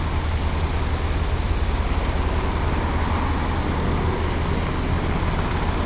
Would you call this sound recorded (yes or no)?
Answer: yes